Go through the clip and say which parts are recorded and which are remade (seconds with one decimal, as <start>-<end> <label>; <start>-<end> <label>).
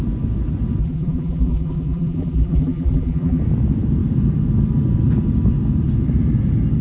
0.0-0.8 recorded; 0.8-3.4 remade; 3.4-6.8 recorded